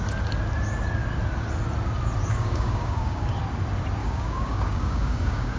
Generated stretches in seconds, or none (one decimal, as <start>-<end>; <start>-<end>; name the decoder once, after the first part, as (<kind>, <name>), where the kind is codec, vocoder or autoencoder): 2.3-3.3 (codec, DAC); 4.0-5.6